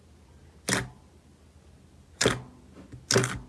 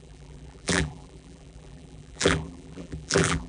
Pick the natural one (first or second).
first